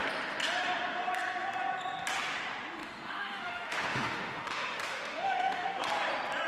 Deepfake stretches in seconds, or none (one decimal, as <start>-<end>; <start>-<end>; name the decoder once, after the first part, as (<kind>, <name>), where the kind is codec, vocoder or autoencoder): 2.8-5.8 (autoencoder, DAC-VAE)